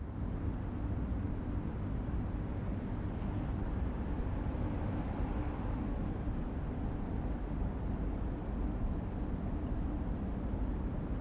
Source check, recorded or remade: recorded